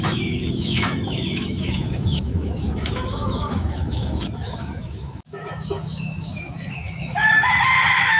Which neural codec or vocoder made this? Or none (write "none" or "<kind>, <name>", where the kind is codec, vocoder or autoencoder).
autoencoder, DAC-VAE